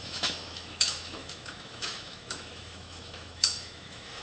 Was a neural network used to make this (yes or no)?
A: yes